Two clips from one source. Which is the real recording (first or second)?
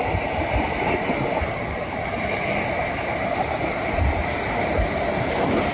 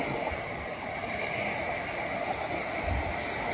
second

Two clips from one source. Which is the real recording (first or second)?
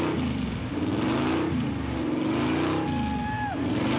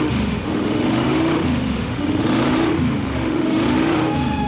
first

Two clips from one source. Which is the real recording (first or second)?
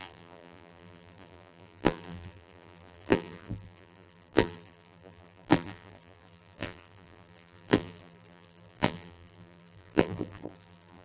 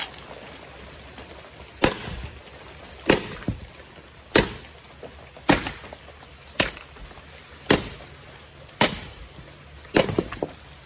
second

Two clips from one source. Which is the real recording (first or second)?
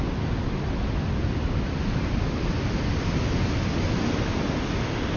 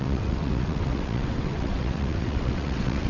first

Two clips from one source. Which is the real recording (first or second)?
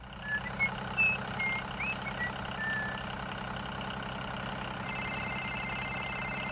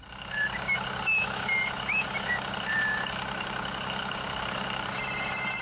first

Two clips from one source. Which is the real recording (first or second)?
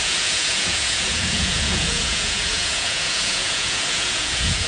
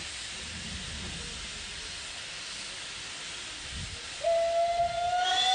second